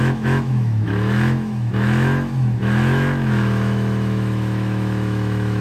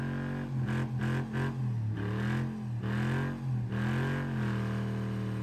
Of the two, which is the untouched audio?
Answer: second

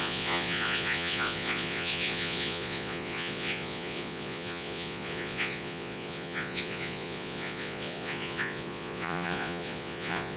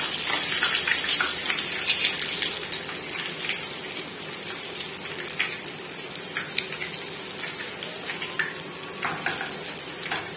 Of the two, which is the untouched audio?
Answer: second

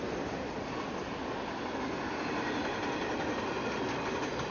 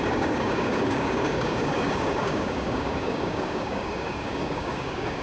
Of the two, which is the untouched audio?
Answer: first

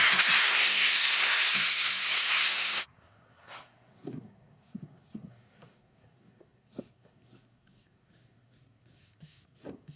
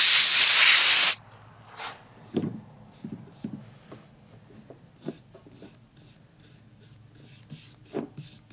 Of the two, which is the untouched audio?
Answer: second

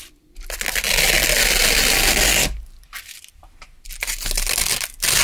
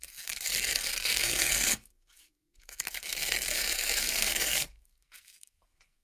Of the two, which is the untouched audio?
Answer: first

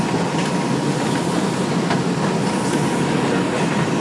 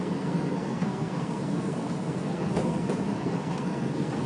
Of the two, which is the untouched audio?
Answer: first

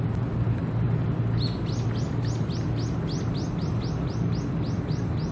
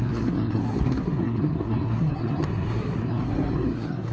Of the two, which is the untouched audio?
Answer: first